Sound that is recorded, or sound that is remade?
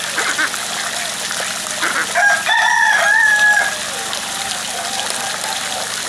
recorded